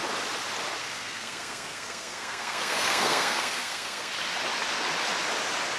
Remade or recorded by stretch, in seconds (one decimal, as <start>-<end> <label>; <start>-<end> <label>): 0.0-0.8 recorded; 0.8-4.1 remade; 4.1-5.8 recorded